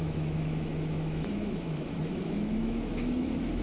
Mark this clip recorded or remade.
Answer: remade